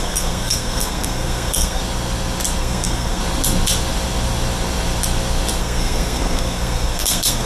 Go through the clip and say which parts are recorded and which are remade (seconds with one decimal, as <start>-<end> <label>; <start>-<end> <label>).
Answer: 0.0-1.8 remade; 1.8-2.6 recorded; 2.6-3.2 remade; 3.2-5.6 recorded; 5.6-7.5 remade